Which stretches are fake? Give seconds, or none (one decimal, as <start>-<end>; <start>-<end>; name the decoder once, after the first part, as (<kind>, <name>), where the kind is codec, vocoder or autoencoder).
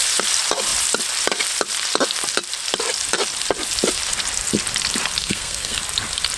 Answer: 5.2-5.8 (codec, SNAC)